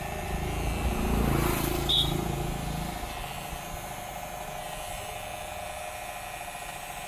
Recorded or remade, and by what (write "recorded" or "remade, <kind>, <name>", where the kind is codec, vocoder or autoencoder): recorded